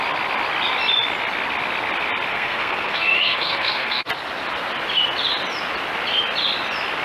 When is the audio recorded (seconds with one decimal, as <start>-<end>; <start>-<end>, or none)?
0.0-2.3; 4.0-7.0